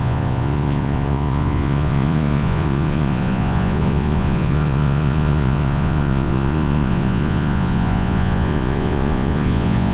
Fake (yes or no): yes